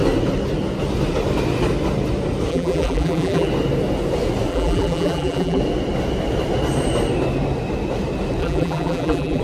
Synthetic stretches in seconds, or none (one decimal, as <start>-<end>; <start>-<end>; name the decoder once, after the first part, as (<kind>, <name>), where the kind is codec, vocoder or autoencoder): 2.5-3.5 (vocoder, BigVGAN v2); 4.5-5.6; 8.4-9.4